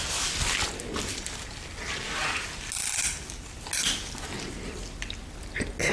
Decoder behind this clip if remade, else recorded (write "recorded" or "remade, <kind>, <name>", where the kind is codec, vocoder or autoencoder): recorded